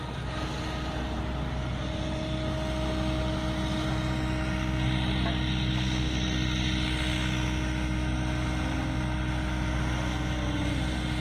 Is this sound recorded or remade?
recorded